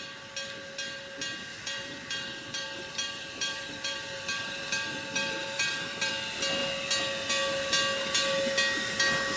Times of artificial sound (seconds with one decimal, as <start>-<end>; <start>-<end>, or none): 1.5-6.1